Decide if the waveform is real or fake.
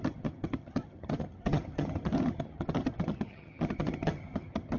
fake